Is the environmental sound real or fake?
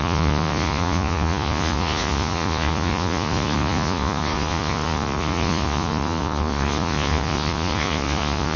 fake